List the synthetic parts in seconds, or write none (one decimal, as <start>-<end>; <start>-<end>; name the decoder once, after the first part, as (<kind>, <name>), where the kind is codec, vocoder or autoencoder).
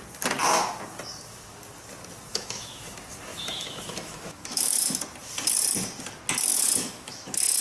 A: 2.3-2.9 (autoencoder, DAC-VAE); 3.3-5.0; 6.5-7.6